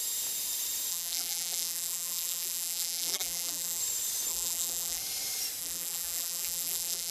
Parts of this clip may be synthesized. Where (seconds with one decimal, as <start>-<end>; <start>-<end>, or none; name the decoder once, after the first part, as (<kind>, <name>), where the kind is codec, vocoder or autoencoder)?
0.9-3.8 (vocoder, BigVGAN v2); 4.3-5.0; 5.6-7.1